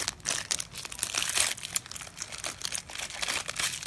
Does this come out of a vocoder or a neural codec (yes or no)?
no